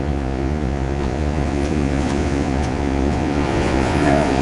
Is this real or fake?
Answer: fake